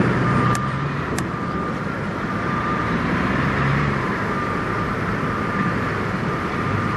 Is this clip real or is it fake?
fake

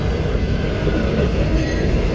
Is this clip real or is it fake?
real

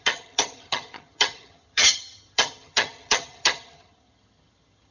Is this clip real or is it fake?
fake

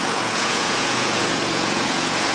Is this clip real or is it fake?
fake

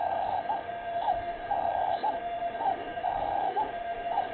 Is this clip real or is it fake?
fake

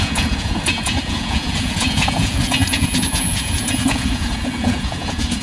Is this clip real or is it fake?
fake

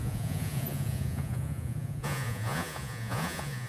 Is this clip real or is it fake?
fake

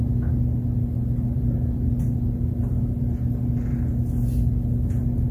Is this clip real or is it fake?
real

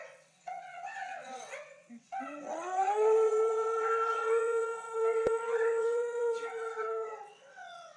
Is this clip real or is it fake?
fake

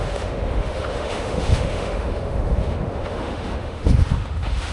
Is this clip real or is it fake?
fake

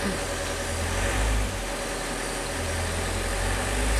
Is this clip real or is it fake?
real